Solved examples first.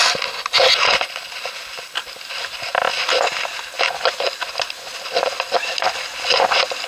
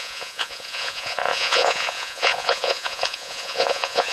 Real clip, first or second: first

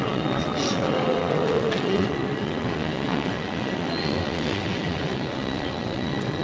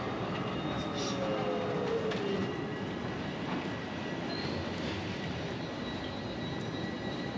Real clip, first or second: second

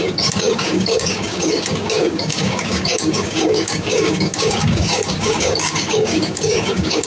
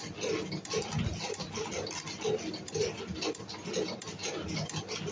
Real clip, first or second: second